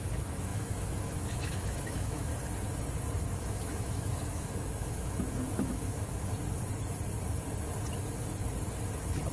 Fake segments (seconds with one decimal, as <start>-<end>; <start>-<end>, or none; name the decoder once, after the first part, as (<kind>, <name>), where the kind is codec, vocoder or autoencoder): 0.0-2.3 (autoencoder, DAC-VAE); 3.2-6.3